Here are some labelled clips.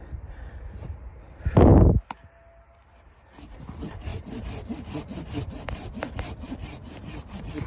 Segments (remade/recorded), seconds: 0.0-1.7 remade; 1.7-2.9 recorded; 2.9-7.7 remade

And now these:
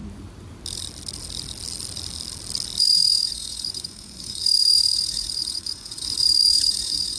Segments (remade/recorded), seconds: 0.0-2.8 recorded; 2.8-7.2 remade

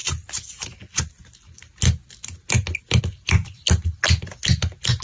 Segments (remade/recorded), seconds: 0.0-5.0 recorded

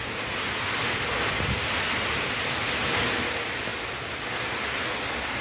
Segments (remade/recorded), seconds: 0.0-5.4 recorded